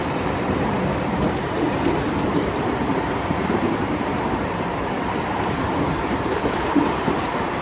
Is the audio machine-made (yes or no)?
yes